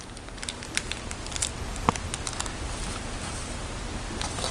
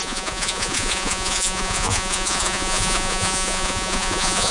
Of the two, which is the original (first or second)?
first